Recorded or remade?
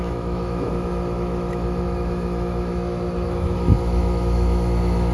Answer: remade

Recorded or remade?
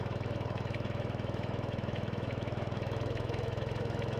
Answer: remade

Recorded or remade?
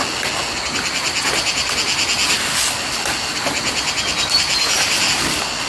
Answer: recorded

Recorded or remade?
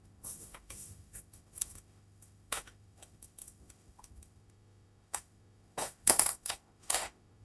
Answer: remade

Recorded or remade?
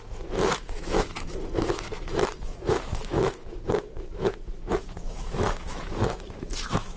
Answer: remade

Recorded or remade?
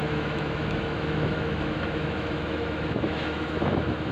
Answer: remade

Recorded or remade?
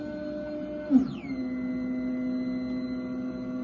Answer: recorded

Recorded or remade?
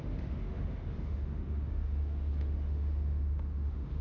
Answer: remade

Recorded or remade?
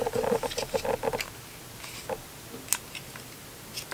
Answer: recorded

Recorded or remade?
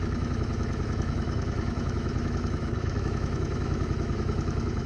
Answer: remade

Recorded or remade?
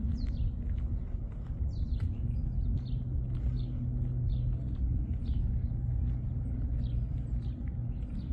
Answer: recorded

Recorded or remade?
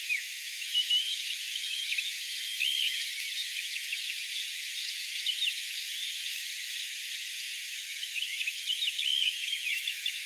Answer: remade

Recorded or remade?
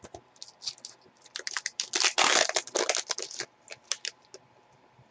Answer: recorded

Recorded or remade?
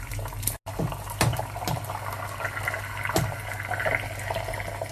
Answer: recorded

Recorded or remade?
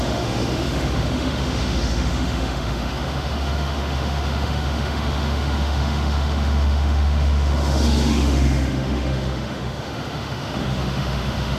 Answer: remade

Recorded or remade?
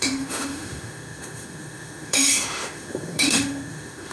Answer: remade